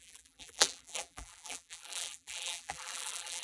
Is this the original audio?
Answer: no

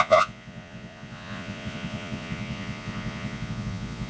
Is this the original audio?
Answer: no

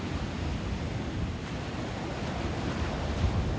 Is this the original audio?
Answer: yes